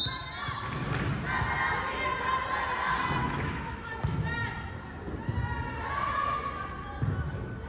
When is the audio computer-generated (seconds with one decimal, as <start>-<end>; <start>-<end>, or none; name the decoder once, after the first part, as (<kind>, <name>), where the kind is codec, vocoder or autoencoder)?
3.2-3.9 (autoencoder, DAC-VAE)